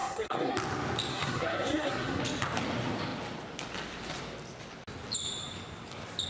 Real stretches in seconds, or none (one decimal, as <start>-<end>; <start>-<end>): 0.5-1.1; 2.2-6.3